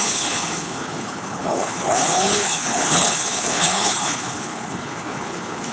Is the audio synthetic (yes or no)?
yes